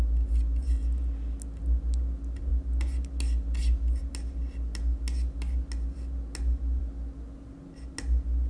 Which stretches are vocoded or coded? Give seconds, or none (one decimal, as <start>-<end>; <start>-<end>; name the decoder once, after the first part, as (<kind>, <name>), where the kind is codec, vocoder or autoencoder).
none